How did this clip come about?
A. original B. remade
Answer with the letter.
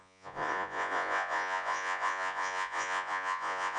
B